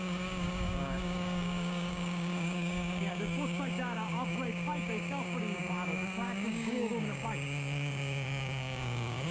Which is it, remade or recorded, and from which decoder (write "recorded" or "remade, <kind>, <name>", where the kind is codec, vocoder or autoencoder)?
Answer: remade, codec, DAC